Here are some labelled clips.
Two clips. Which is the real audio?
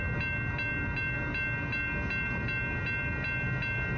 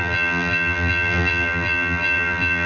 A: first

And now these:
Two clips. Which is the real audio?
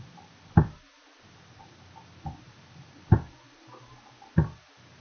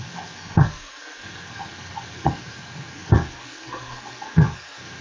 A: first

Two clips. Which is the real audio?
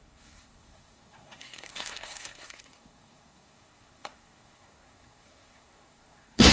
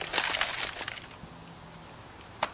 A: second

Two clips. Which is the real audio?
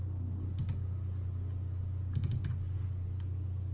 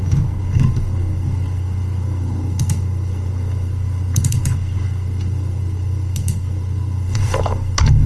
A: first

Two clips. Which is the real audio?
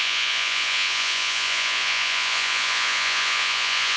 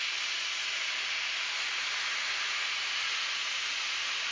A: second